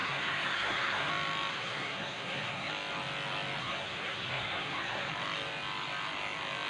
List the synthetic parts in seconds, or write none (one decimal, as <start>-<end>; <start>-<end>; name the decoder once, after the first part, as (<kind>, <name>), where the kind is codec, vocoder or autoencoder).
0.0-1.1 (codec, SNAC); 1.5-2.7; 3.6-5.1